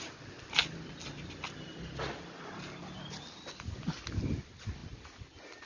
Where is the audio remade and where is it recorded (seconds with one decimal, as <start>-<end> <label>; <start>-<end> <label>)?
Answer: 0.0-5.7 recorded

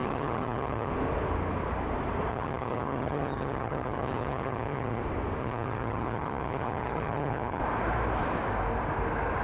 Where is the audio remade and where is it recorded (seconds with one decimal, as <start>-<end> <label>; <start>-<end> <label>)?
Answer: 0.0-0.9 remade; 0.9-2.3 recorded; 2.3-5.0 remade; 5.0-5.4 recorded; 5.4-7.6 remade; 7.6-9.4 recorded

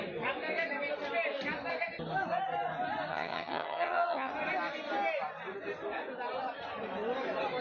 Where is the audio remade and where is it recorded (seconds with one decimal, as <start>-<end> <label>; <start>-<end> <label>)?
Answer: 0.0-3.1 recorded; 3.1-4.3 remade; 4.3-7.6 recorded

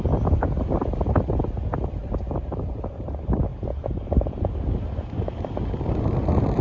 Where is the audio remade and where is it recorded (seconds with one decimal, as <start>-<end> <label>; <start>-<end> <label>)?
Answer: 0.0-6.6 recorded